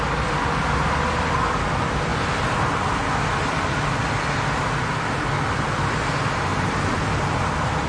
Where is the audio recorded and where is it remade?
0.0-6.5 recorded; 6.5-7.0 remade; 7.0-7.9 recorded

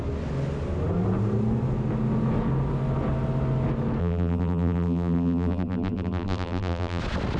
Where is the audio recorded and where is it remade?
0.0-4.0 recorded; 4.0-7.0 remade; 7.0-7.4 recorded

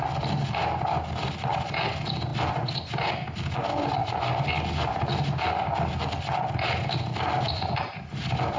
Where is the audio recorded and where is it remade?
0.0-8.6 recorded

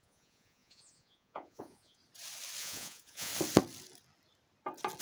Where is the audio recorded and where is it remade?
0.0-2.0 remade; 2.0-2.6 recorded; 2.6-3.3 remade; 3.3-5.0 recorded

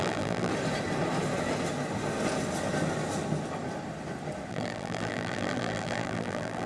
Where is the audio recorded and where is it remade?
0.0-0.5 remade; 0.5-4.5 recorded; 4.5-6.7 remade

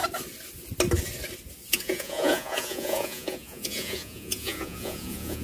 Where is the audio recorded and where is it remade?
0.0-1.7 recorded; 1.7-5.4 remade

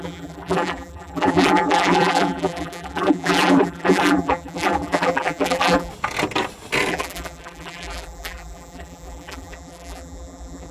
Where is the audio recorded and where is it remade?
0.0-5.9 remade; 5.9-6.9 recorded; 6.9-10.7 remade